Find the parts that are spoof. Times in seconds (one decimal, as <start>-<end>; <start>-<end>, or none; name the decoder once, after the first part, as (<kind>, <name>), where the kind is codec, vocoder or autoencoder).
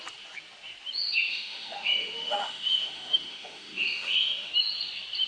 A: 1.3-4.5 (autoencoder, DAC-VAE)